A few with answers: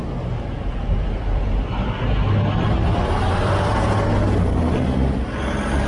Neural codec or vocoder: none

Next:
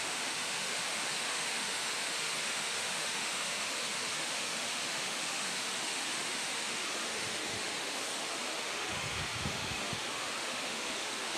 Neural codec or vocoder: autoencoder, DAC-VAE